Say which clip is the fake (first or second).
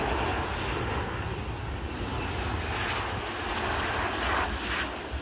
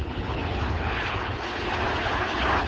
second